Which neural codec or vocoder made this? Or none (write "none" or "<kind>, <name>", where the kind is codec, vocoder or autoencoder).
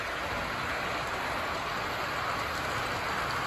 none